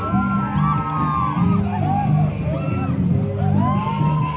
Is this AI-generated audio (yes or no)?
no